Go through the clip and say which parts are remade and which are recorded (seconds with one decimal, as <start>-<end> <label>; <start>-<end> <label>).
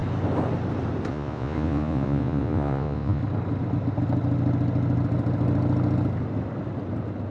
0.0-1.1 recorded; 1.1-3.2 remade; 3.2-7.3 recorded